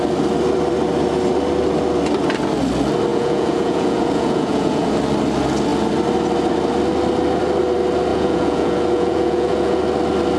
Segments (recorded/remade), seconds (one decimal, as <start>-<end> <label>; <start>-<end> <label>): 0.0-3.1 recorded; 3.1-4.9 remade; 4.9-8.1 recorded; 8.1-9.8 remade; 9.8-10.4 recorded